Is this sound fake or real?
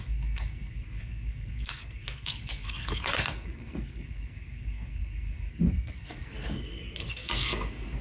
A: fake